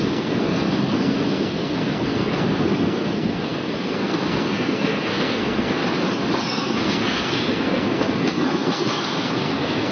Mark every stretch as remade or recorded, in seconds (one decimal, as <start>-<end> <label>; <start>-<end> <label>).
0.0-5.8 remade; 5.8-6.4 recorded; 6.4-9.9 remade